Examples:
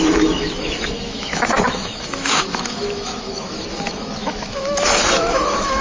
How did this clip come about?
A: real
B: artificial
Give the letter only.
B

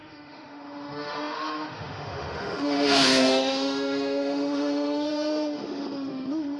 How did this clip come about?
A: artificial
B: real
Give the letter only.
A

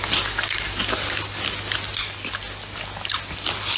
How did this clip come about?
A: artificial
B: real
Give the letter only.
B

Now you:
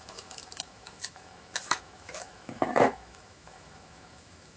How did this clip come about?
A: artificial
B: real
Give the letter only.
A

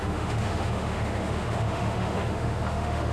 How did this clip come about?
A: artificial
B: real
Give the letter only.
A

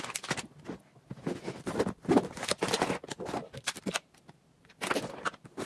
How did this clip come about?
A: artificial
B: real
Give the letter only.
B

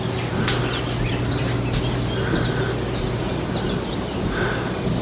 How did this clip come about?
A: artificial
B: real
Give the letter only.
B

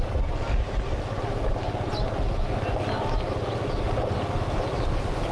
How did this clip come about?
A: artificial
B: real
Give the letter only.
B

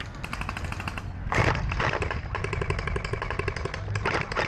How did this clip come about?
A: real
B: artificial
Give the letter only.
A